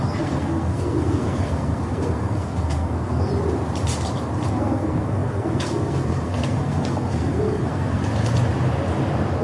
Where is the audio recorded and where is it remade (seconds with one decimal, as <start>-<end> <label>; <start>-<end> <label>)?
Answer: 0.0-3.3 remade; 3.3-4.5 recorded; 4.5-8.0 remade; 8.0-9.4 recorded